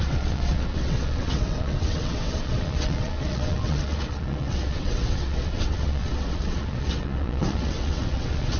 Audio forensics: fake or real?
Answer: fake